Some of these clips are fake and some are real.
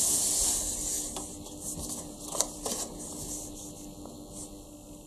real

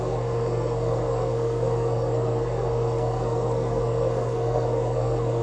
fake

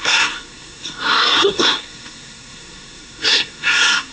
fake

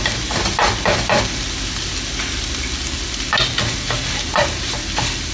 real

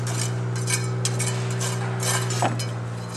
real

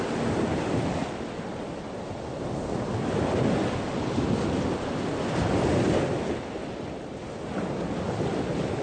real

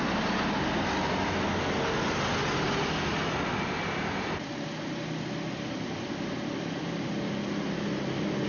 real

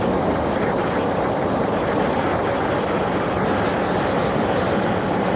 real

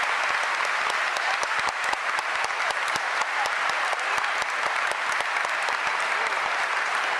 real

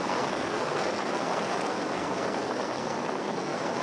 fake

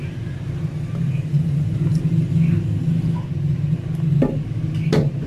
real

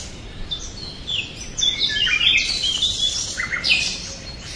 real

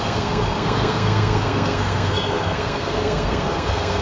fake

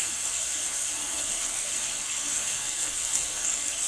fake